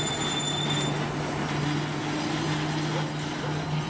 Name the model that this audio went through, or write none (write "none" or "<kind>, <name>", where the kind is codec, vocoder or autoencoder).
none